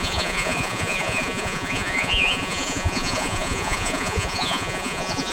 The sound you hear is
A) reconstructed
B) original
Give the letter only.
A